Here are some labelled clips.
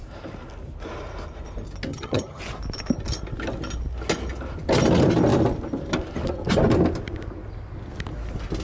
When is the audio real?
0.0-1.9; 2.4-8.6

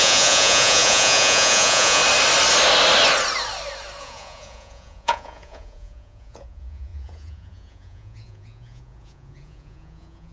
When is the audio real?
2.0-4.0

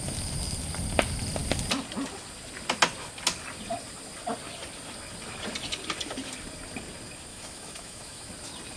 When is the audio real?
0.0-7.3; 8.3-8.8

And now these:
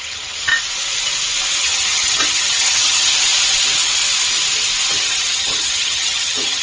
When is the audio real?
0.5-1.6; 3.1-4.9

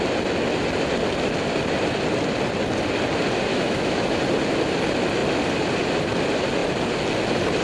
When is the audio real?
0.0-3.5; 4.2-7.6

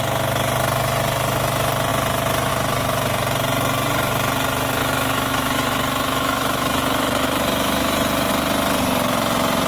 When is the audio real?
0.0-4.8; 8.3-9.7

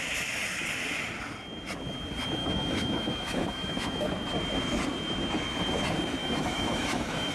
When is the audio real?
0.0-2.4; 4.1-6.2

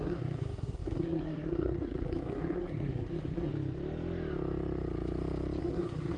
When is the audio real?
3.5-5.6